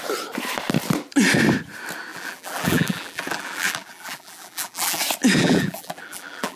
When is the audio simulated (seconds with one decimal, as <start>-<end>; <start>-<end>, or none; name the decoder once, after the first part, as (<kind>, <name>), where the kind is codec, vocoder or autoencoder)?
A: 2.1-5.0 (vocoder, BigVGAN v2); 5.4-6.6